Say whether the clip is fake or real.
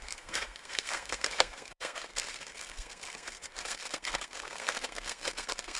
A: fake